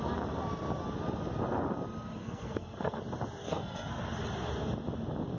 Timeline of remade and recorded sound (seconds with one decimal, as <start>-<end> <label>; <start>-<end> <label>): 0.0-2.2 recorded; 2.2-3.0 remade; 3.0-3.4 recorded; 3.4-4.0 remade; 4.0-5.4 recorded